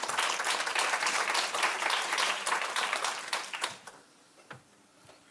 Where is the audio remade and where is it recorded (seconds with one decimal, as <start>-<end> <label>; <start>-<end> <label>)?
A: 0.0-0.7 recorded; 0.7-3.9 remade; 3.9-5.3 recorded